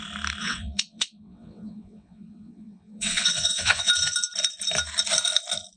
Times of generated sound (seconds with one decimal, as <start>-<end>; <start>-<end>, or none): 0.4-3.9